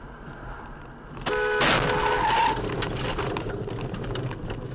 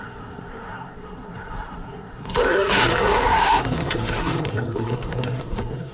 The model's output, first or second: second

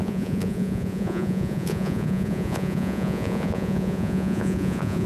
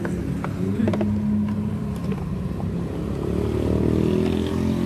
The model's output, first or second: first